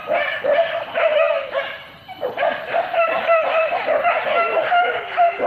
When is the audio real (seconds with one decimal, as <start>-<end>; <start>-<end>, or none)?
0.0-5.5

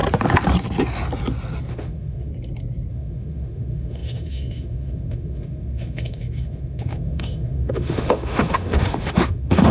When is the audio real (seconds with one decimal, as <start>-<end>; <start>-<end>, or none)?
0.0-1.7; 2.3-2.9

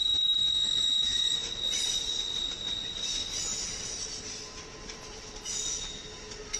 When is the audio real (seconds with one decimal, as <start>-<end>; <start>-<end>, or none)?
1.5-6.6

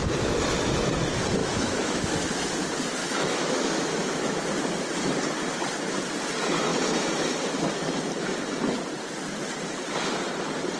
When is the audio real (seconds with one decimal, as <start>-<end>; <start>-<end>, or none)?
0.0-1.4; 2.1-3.0; 4.3-10.8

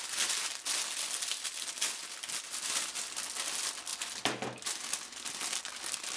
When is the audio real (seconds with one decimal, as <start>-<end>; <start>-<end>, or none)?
0.0-6.2

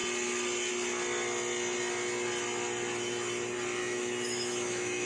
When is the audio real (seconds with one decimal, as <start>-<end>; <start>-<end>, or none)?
0.0-3.8

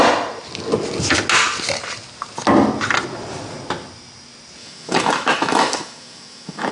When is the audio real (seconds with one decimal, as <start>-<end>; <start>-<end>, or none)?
0.0-4.6